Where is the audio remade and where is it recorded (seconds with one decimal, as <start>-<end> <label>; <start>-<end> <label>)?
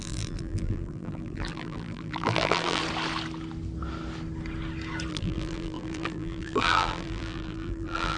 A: 0.0-2.8 remade; 2.8-5.1 recorded; 5.1-8.2 remade